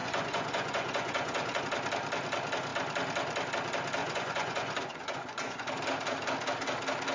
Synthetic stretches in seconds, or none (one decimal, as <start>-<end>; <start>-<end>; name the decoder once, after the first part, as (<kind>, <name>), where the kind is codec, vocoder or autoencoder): 0.0-1.6 (vocoder, Vocos); 4.0-5.7